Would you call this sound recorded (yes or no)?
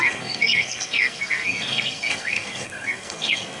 no